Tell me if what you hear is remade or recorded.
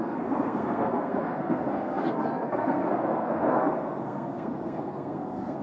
remade